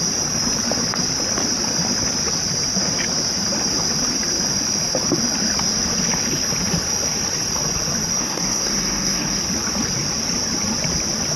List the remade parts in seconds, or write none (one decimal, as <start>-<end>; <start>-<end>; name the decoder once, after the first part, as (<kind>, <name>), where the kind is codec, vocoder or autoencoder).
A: 8.2-9.4 (codec, SNAC)